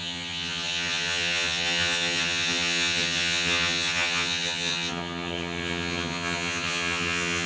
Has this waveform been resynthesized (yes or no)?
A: yes